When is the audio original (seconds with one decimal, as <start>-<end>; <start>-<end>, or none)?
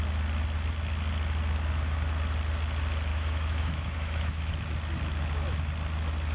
0.0-3.1; 4.5-6.3